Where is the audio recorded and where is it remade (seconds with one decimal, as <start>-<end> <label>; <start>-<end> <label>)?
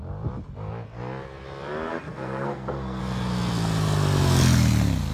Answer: 0.0-1.9 recorded; 1.9-3.0 remade; 3.0-5.1 recorded